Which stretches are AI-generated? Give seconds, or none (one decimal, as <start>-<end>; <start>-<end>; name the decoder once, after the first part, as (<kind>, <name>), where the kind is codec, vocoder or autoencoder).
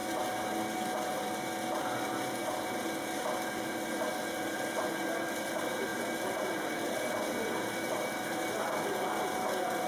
1.8-2.4 (vocoder, BigVGAN v2); 4.3-9.9